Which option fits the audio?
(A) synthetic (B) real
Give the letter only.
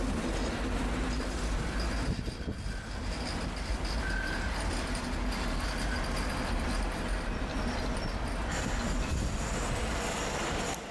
B